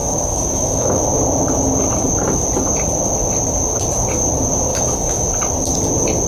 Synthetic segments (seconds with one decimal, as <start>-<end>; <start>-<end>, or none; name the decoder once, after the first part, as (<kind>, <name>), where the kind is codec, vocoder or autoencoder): 0.0-1.0 (autoencoder, DAC-VAE); 4.7-5.3